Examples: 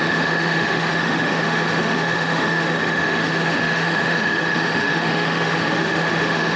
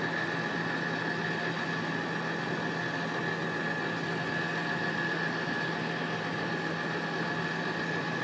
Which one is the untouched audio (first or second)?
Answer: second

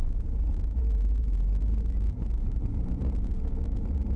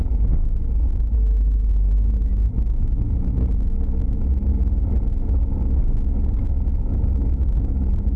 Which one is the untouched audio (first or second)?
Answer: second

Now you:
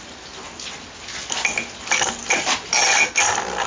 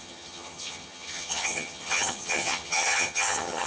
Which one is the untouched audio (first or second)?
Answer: first